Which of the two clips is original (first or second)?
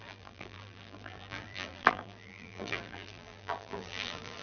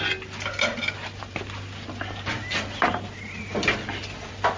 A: second